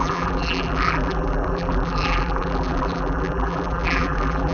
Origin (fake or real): fake